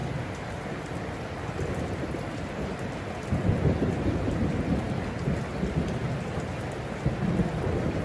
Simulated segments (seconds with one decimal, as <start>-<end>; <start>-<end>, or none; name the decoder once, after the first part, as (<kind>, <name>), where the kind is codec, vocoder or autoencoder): none